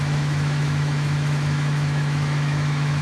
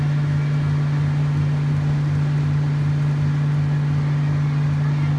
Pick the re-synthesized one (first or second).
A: first